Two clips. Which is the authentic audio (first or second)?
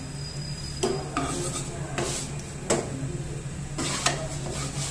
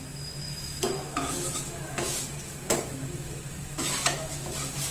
first